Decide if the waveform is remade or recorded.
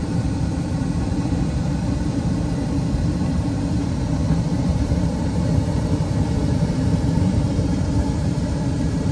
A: remade